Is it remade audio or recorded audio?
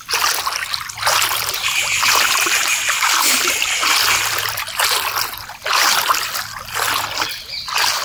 recorded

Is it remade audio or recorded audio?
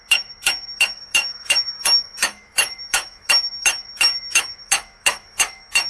remade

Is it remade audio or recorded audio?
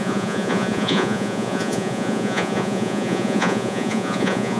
remade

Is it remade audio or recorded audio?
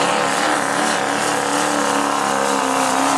recorded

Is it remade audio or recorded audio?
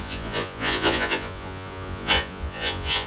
remade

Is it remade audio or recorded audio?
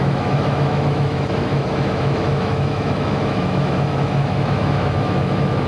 remade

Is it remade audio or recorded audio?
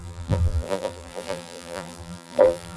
remade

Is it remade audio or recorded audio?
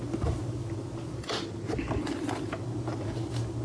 recorded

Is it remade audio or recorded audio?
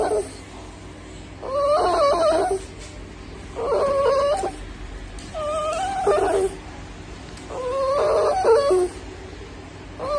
recorded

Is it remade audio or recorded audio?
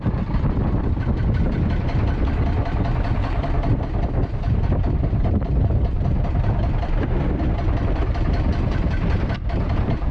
recorded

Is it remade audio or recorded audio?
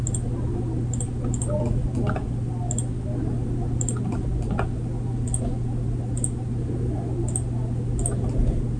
recorded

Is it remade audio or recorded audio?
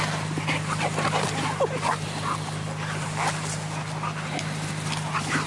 recorded